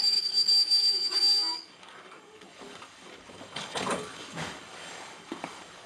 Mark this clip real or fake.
fake